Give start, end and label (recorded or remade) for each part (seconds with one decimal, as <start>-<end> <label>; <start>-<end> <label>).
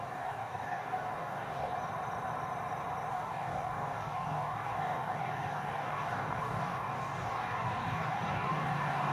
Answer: 0.0-1.7 remade; 1.7-3.1 recorded; 3.1-9.1 remade